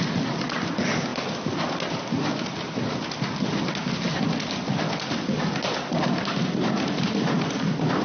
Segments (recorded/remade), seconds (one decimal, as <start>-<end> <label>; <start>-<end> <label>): 0.0-8.0 recorded